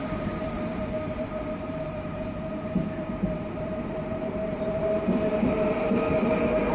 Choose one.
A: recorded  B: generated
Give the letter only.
B